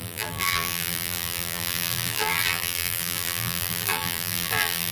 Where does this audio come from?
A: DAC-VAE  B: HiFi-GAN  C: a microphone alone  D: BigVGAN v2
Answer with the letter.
D